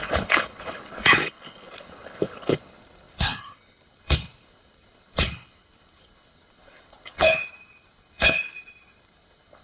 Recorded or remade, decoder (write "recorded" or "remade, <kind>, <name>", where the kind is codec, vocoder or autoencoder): remade, codec, HILCodec